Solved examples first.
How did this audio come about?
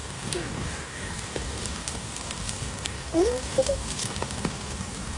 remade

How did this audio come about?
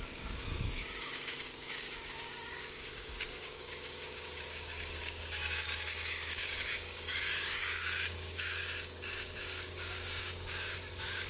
remade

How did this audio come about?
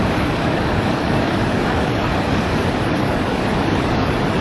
remade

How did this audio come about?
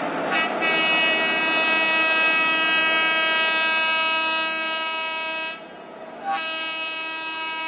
recorded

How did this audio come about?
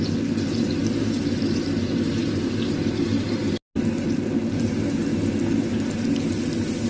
recorded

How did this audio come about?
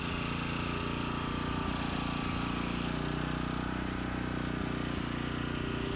recorded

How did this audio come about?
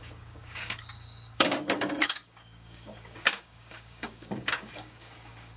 remade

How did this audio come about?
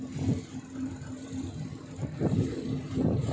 recorded